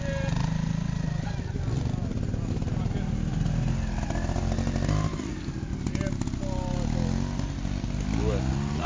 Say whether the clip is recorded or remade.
recorded